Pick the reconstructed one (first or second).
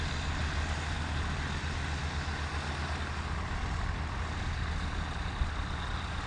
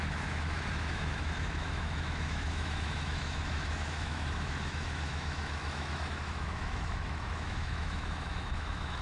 second